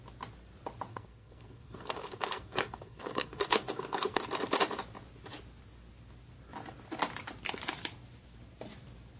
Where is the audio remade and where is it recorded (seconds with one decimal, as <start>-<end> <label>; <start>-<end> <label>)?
0.0-0.9 recorded; 0.9-4.2 remade; 4.2-9.2 recorded